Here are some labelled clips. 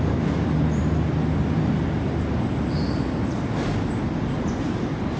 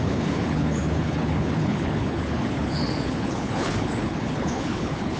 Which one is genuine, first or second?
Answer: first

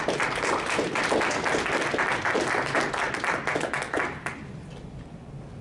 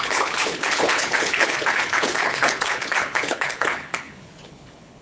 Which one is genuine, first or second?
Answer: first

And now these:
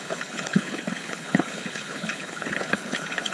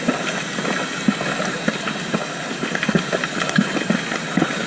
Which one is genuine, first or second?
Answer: second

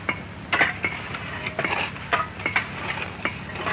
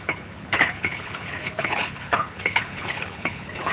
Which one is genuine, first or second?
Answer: first